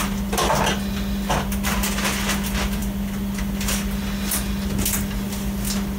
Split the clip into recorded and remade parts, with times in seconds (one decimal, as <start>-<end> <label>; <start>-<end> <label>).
0.0-6.0 recorded